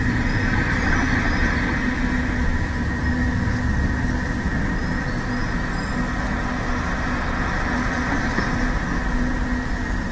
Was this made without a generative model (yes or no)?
yes